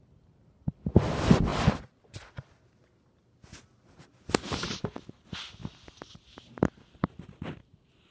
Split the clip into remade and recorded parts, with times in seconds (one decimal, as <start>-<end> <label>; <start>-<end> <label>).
0.0-8.1 recorded